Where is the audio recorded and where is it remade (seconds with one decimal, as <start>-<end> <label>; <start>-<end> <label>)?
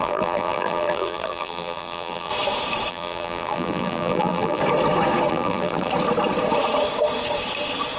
0.0-2.3 remade; 2.3-2.9 recorded; 2.9-4.6 remade; 4.6-5.3 recorded; 5.3-5.9 remade; 5.9-8.0 recorded